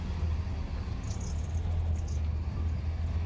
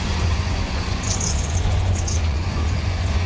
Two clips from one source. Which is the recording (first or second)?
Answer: first